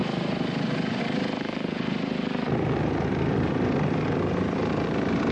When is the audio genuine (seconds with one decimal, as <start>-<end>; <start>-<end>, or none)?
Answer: 0.0-5.3